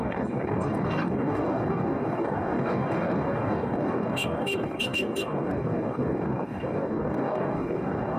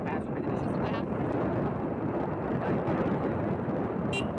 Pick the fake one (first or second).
first